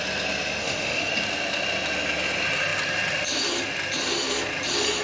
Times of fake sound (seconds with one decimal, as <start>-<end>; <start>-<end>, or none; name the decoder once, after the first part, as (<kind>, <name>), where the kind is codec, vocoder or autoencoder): 0.6-1.1 (autoencoder, DAC-VAE)